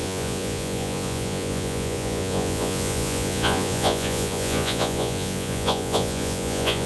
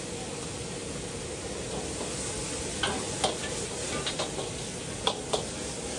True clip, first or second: second